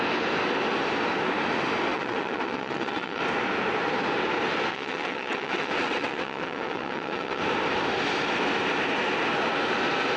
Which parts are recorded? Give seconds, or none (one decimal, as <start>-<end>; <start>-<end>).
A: 0.0-1.9; 3.2-4.7; 7.4-10.2